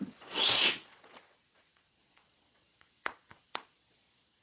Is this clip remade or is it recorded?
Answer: remade